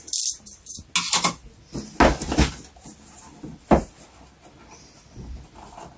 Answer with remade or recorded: recorded